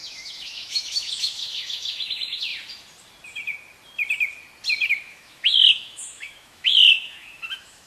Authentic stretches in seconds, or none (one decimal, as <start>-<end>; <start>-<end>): 2.5-4.9